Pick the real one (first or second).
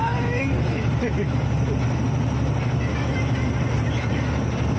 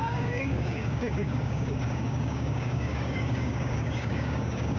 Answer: first